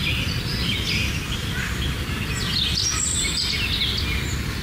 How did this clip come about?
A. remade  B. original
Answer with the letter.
B